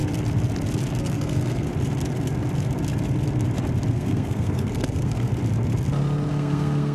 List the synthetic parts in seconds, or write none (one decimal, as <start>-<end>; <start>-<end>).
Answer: 1.0-1.7; 3.9-5.3; 6.3-6.9